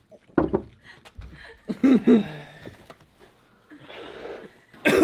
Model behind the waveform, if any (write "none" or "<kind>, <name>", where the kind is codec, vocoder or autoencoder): none